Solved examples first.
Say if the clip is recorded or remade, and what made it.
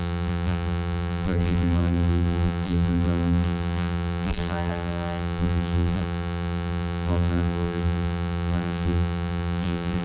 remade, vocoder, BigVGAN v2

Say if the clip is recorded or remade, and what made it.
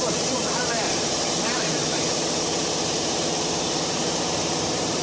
remade, vocoder, BigVGAN v2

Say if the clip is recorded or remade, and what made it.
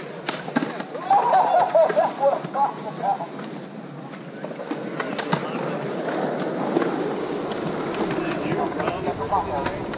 recorded